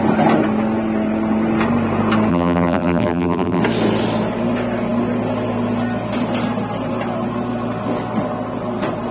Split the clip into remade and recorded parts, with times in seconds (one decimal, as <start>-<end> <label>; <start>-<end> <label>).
0.0-2.3 recorded; 2.3-3.6 remade; 3.6-9.1 recorded